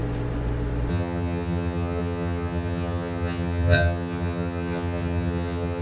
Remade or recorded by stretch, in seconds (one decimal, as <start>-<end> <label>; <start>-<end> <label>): 0.0-0.9 recorded; 0.9-5.8 remade

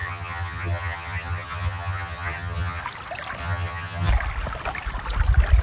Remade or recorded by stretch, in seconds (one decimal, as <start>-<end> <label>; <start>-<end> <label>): 0.0-2.8 remade; 2.8-3.4 recorded; 3.4-4.1 remade; 4.1-5.6 recorded

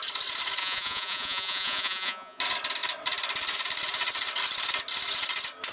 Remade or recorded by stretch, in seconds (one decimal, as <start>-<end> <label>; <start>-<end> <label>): 0.0-0.6 recorded; 0.6-2.4 remade; 2.4-5.7 recorded

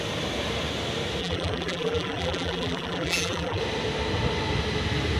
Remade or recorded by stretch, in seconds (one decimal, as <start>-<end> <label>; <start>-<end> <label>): 0.0-1.2 recorded; 1.2-3.6 remade; 3.6-5.2 recorded

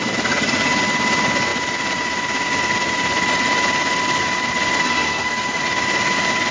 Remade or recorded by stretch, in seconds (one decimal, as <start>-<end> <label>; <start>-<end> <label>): 0.0-4.8 recorded; 4.8-5.6 remade; 5.6-6.5 recorded